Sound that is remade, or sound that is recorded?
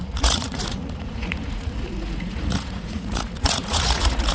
remade